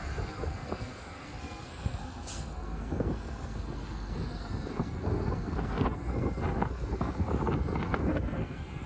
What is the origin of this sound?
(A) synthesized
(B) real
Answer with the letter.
A